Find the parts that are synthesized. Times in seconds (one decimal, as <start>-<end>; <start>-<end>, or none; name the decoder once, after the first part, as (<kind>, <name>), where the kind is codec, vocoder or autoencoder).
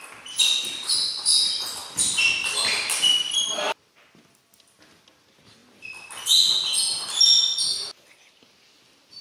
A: none